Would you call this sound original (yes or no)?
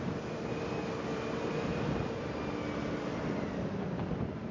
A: yes